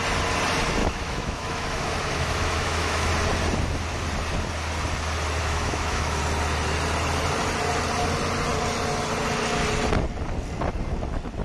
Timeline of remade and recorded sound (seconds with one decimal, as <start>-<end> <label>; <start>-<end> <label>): 0.0-0.8 recorded; 0.8-3.1 remade; 3.1-5.4 recorded; 5.4-6.2 remade; 6.2-11.4 recorded